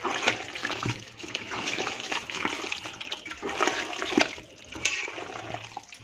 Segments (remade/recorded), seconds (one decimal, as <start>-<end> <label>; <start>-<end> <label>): 0.0-0.6 recorded; 0.6-2.5 remade; 2.5-6.0 recorded